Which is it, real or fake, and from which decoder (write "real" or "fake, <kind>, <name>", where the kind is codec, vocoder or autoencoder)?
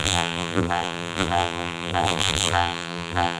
fake, vocoder, BigVGAN v2